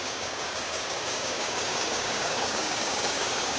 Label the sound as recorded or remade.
remade